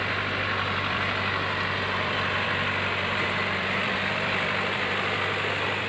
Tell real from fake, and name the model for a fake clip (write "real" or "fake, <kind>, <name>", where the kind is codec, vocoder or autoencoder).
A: fake, vocoder, BigVGAN v2